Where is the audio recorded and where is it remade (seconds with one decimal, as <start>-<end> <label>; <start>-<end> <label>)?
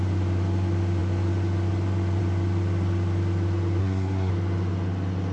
0.0-3.8 recorded; 3.8-4.3 remade; 4.3-5.3 recorded